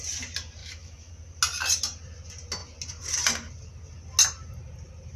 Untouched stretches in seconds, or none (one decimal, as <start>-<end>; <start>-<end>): 0.0-0.6; 1.1-5.2